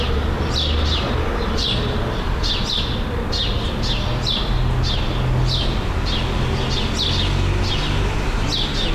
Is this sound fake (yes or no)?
no